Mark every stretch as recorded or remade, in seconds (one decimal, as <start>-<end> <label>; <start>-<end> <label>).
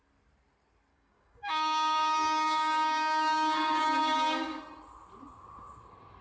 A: 0.0-0.9 recorded; 0.9-4.6 remade; 4.6-6.2 recorded